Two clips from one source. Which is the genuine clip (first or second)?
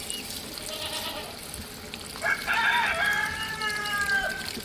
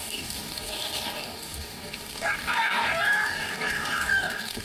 first